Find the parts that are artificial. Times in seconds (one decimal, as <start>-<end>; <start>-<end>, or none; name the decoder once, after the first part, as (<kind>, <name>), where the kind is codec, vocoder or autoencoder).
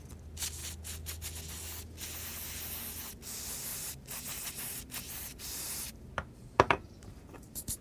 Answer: 3.7-7.8 (vocoder, BigVGAN v2)